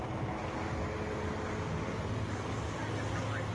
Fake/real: real